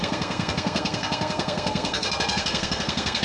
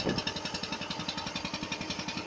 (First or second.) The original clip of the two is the second